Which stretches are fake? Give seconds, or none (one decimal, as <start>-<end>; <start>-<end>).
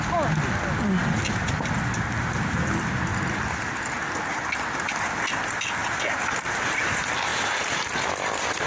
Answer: 3.1-3.7; 5.8-6.6; 7.3-8.1